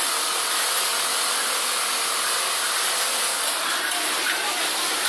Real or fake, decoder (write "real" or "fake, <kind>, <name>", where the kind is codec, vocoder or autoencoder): real